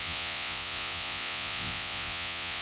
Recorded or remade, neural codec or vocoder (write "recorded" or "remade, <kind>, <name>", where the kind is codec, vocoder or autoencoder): remade, vocoder, Vocos